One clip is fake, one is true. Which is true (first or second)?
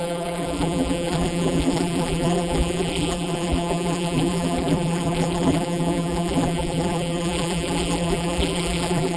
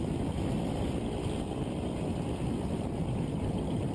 second